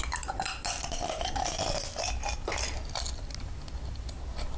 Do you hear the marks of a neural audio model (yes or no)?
no